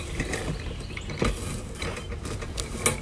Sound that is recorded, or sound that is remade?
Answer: recorded